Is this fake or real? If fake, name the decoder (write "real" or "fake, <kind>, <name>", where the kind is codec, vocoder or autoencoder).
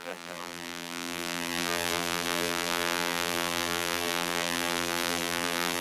fake, vocoder, BigVGAN v2